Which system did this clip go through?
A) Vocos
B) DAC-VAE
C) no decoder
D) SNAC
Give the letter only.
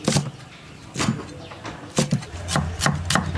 C